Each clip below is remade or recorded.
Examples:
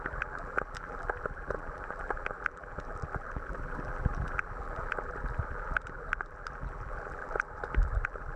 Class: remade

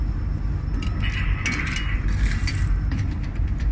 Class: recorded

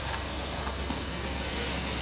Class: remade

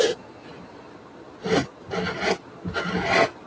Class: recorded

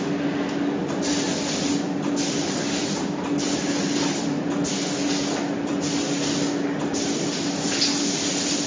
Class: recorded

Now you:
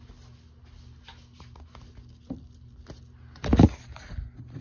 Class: recorded